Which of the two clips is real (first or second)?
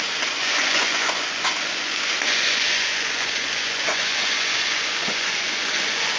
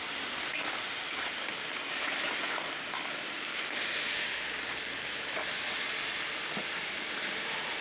second